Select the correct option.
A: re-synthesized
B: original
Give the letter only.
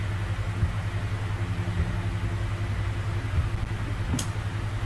B